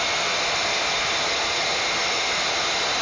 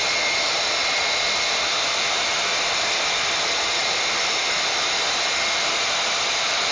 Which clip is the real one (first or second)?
first